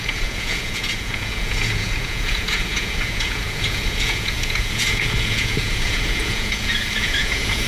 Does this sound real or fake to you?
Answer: fake